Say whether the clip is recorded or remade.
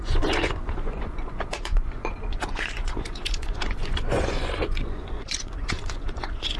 remade